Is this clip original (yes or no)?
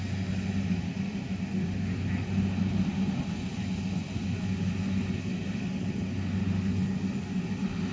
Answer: yes